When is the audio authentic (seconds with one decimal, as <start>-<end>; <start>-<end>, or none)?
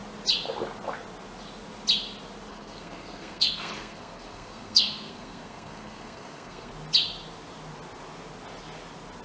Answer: 0.0-2.5; 6.7-9.2